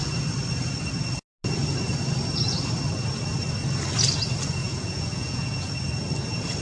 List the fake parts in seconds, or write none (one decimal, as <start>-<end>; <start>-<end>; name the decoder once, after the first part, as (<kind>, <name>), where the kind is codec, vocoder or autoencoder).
4.6-5.7 (vocoder, Vocos)